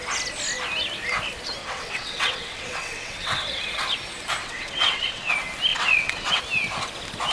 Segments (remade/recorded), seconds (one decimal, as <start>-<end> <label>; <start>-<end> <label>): 0.0-1.6 recorded; 1.6-3.7 remade; 3.7-4.4 recorded; 4.4-5.3 remade; 5.3-5.7 recorded; 5.7-6.4 remade; 6.4-7.3 recorded